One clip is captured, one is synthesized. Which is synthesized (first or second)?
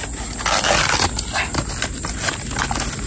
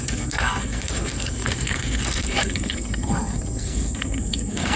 second